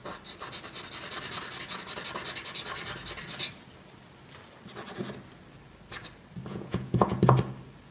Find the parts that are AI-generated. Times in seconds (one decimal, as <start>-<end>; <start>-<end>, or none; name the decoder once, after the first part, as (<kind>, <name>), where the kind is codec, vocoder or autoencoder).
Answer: 6.5-7.2 (vocoder, Vocos)